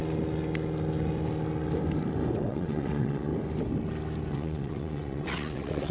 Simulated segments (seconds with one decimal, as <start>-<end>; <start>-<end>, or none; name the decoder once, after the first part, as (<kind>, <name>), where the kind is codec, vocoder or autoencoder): 2.4-3.3 (vocoder, WaveNeXt); 4.3-5.9